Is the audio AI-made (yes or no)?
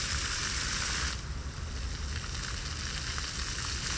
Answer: no